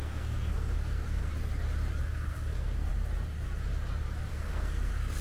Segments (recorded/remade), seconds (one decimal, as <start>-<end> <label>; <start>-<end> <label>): 0.0-1.3 remade; 1.3-2.0 recorded; 2.0-2.9 remade; 2.9-4.3 recorded; 4.3-5.2 remade